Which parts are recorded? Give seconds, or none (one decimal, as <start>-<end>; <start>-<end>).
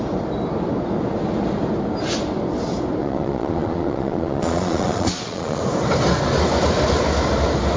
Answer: 0.0-3.0; 5.6-7.8